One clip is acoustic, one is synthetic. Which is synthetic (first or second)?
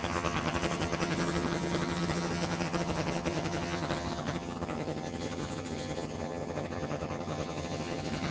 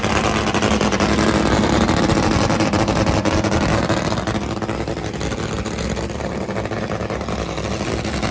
first